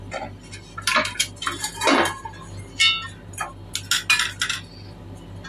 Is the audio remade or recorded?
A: recorded